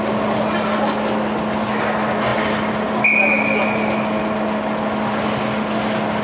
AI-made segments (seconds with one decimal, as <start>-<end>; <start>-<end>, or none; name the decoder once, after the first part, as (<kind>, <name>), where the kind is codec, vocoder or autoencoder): none